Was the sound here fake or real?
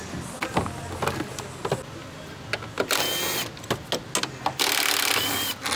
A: real